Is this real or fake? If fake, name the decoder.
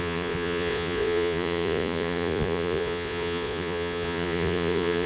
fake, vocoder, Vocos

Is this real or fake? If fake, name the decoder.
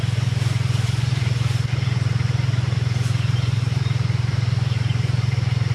fake, vocoder, Vocos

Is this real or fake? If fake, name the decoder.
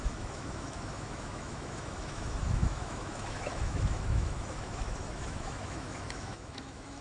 fake, autoencoder, DAC-VAE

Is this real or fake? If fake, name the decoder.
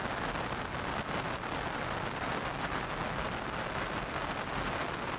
real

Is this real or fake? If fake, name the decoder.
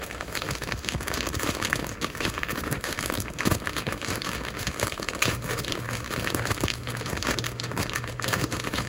fake, autoencoder, DAC-VAE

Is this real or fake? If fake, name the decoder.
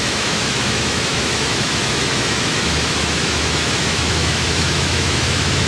fake, autoencoder, DAC-VAE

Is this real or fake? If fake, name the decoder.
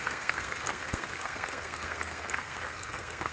fake, codec, SNAC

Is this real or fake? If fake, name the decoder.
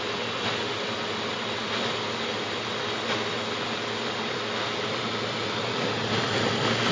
real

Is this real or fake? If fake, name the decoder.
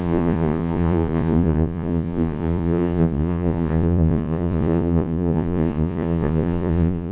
fake, vocoder, Vocos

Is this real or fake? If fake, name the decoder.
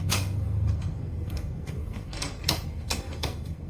fake, codec, SNAC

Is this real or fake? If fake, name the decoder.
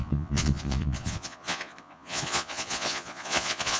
fake, vocoder, Vocos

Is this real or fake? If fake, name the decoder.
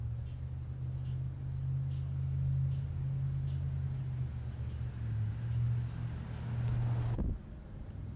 real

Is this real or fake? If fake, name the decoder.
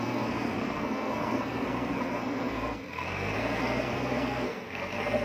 fake, codec, SNAC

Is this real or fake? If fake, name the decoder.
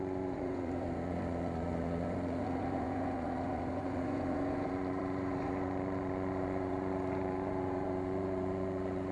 fake, vocoder, Vocos